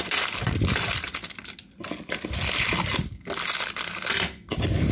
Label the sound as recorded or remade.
recorded